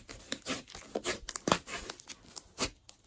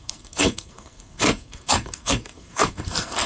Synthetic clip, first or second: second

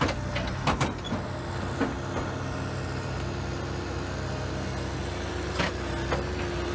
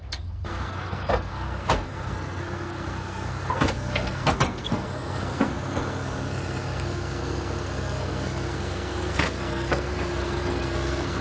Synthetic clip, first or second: second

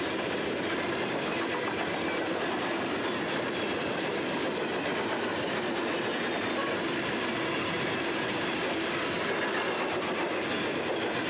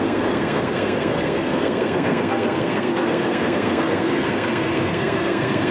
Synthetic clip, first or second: second